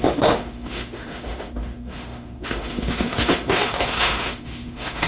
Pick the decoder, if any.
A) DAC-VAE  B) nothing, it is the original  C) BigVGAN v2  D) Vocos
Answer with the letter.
A